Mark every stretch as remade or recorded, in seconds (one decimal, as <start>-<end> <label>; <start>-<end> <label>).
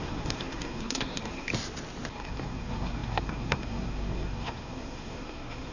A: 0.0-1.5 remade; 1.5-2.1 recorded; 2.1-5.7 remade